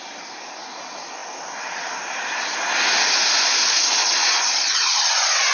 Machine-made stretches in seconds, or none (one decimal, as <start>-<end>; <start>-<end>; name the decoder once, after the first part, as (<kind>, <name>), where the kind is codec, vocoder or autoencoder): 4.0-5.1 (vocoder, Vocos)

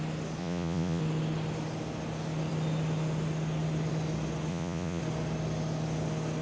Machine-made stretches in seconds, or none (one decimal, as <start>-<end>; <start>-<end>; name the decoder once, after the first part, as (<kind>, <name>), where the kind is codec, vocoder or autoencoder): 0.4-1.0 (vocoder, Vocos); 4.5-5.0

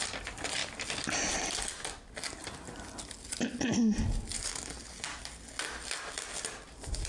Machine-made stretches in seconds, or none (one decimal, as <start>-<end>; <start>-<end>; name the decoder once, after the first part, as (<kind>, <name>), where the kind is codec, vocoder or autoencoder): none

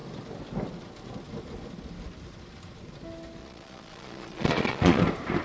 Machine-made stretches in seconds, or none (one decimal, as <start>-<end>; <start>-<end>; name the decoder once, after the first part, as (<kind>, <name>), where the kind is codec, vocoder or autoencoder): 3.4-5.0 (vocoder, Vocos)

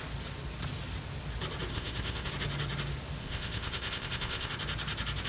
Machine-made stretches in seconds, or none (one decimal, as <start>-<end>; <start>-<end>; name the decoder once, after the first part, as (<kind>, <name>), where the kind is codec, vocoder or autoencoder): 1.7-2.3 (codec, ZipCodec); 3.2-4.5

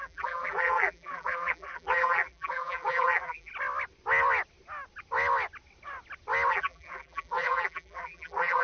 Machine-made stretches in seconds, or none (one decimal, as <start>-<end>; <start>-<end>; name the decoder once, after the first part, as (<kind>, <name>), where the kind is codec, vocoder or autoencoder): 0.0-3.5 (vocoder, BigVGAN v2); 6.5-8.6

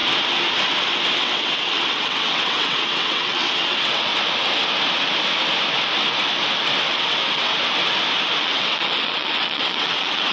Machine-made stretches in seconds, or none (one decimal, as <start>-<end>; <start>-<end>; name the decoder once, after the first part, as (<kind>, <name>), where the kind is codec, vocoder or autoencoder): 1.1-4.1 (vocoder, WaveNeXt); 6.9-7.5; 8.4-10.3

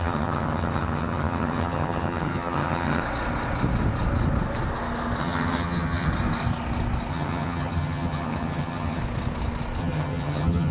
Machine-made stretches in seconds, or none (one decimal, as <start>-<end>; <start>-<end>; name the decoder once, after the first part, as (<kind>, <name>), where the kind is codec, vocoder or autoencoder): 0.0-3.0 (vocoder, HiFi-GAN); 5.2-6.1; 7.1-9.0; 9.8-10.7